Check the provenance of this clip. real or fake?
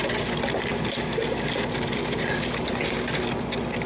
real